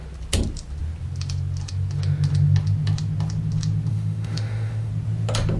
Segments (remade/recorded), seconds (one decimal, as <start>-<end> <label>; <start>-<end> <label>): 0.0-3.9 recorded; 3.9-4.9 remade; 4.9-5.6 recorded